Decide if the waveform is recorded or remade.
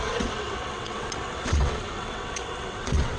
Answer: remade